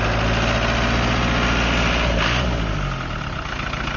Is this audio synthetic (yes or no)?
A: no